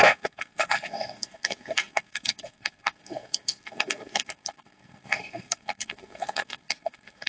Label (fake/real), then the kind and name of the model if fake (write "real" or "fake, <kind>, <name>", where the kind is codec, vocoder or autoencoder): fake, codec, SNAC